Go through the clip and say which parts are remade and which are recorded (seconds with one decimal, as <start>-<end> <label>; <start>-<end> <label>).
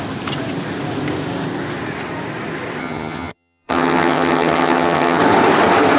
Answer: 0.0-2.8 recorded; 2.8-5.2 remade; 5.2-6.0 recorded